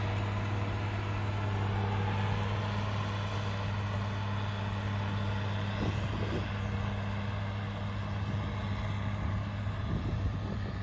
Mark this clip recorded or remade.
recorded